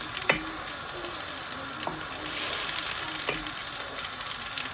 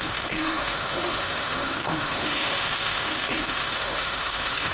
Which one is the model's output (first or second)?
second